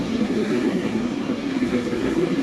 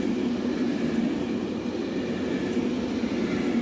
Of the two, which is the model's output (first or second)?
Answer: first